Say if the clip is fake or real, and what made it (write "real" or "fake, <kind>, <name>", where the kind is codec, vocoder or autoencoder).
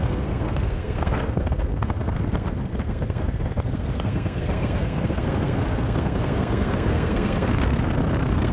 fake, codec, SNAC